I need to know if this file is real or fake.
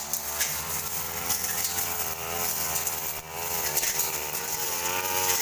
real